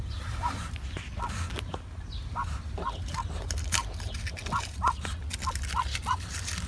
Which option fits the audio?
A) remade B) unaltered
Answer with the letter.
B